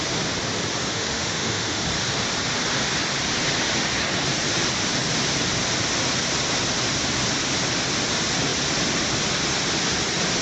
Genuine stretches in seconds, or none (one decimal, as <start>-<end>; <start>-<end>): 0.0-0.9; 1.8-10.4

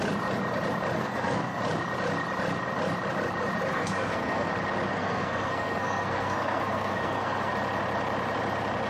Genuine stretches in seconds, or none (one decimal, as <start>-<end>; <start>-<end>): 0.0-1.0; 1.6-3.7; 4.5-4.9; 7.5-8.9

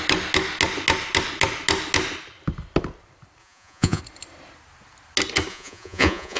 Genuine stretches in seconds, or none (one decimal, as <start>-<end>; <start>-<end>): 0.0-3.4; 4.0-5.5

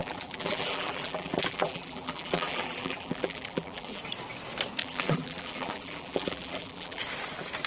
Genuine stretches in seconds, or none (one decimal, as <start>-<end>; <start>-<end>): 4.0-4.8; 7.0-7.7

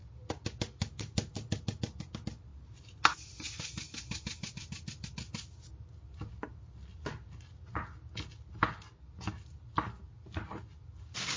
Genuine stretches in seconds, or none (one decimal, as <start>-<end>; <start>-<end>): 0.0-11.4

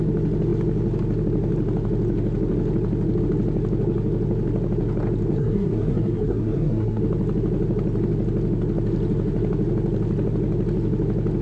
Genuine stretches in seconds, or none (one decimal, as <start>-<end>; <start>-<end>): 0.0-5.3; 7.0-11.4